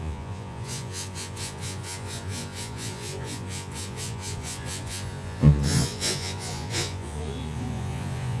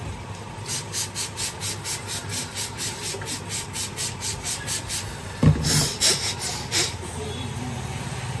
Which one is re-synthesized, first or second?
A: first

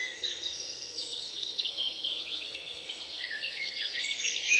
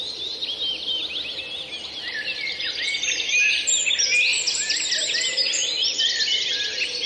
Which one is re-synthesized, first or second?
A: first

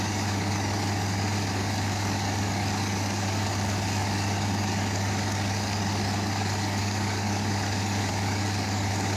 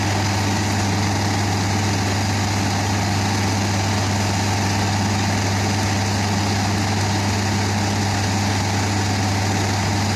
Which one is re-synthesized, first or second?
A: first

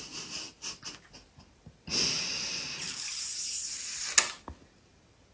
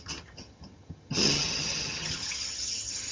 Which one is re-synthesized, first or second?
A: second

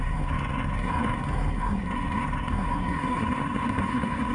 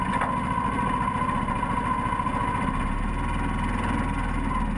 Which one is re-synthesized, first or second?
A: first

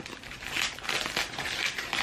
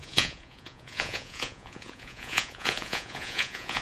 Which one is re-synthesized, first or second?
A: second